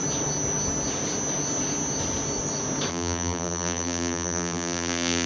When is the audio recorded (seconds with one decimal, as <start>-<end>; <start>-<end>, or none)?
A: 0.0-2.9